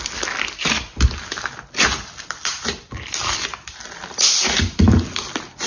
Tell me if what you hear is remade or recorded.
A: recorded